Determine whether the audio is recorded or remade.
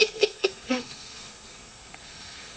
remade